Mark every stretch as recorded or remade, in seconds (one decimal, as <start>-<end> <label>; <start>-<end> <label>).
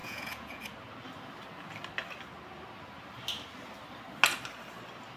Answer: 0.0-0.6 remade; 0.6-5.2 recorded